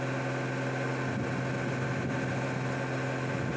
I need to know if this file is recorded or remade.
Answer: recorded